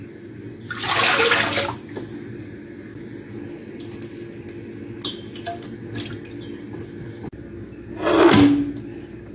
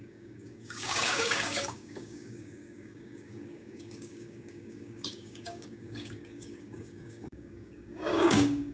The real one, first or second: first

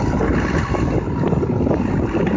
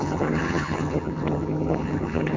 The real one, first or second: first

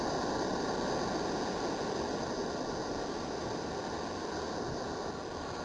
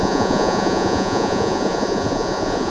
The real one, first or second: first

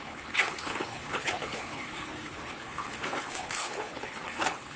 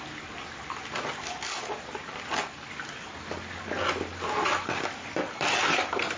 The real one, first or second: second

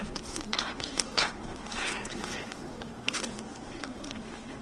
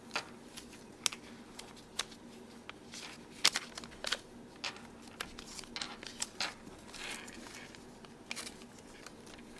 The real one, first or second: second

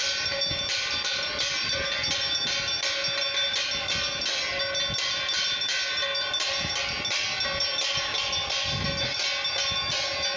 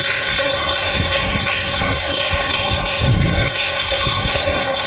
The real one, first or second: first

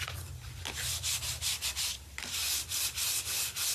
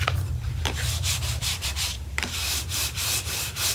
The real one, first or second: first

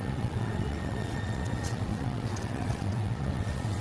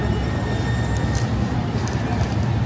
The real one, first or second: second